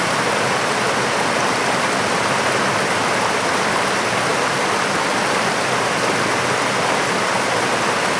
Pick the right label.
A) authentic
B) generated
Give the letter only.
A